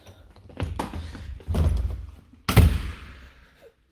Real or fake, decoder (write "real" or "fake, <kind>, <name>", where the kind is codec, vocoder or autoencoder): real